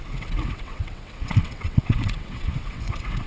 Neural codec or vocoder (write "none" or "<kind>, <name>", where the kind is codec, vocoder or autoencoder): vocoder, WaveNeXt